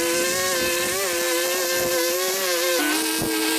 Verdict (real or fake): real